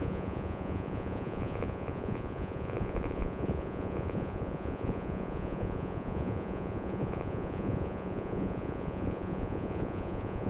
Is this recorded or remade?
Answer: remade